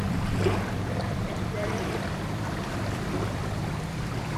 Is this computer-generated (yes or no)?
yes